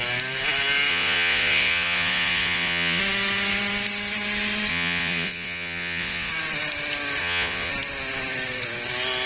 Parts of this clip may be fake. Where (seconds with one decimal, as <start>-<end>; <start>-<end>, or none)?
0.9-3.0; 4.7-6.3; 7.2-7.7